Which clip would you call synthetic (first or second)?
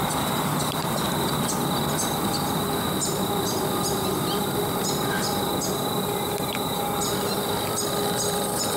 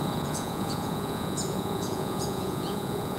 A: second